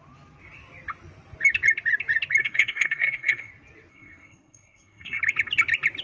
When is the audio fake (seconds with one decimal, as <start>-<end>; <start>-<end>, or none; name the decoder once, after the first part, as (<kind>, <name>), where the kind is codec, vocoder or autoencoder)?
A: 2.4-3.5 (codec, SNAC); 3.9-5.2